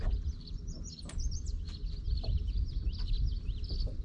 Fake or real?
real